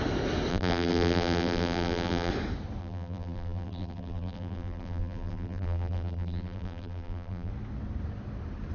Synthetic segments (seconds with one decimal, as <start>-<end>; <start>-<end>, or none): 0.5-2.3; 2.8-7.5